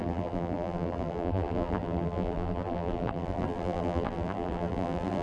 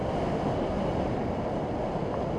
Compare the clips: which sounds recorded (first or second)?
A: second